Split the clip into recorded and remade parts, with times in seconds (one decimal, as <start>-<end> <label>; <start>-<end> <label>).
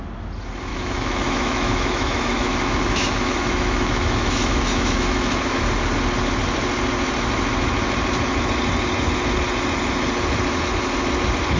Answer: 0.0-0.7 recorded; 0.7-5.6 remade; 5.6-11.6 recorded